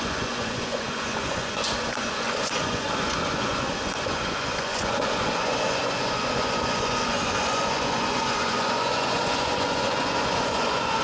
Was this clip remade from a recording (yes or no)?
yes